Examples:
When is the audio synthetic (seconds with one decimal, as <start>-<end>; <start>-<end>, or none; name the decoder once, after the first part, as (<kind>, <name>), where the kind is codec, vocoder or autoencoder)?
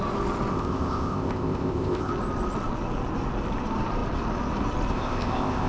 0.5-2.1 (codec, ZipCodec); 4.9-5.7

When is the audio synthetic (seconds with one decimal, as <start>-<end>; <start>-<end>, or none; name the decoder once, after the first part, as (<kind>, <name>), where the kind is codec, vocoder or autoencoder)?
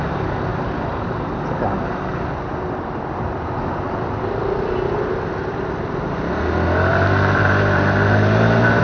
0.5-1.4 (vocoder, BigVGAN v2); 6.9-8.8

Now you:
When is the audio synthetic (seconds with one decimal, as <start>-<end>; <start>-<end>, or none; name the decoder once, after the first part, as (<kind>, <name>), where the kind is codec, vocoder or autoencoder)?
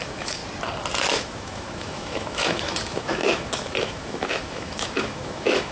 0.0-0.4 (autoencoder, DAC-VAE); 1.1-5.7